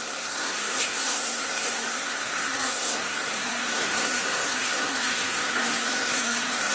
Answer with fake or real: fake